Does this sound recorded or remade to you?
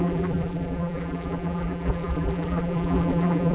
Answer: remade